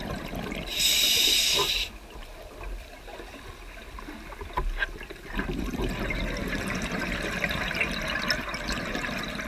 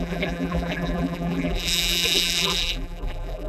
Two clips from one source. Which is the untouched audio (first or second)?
first